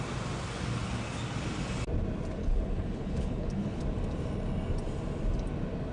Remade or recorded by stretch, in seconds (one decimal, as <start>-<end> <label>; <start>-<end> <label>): 0.0-2.4 recorded; 2.4-3.8 remade; 3.8-5.9 recorded